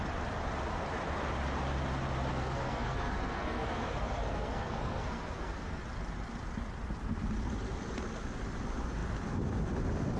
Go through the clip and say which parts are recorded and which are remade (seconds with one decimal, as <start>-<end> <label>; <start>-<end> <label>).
0.0-2.3 recorded; 2.3-5.8 remade; 5.8-10.2 recorded